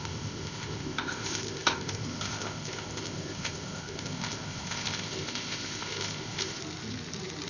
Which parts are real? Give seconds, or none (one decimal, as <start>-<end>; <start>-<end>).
6.6-7.5